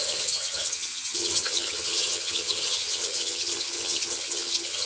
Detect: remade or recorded remade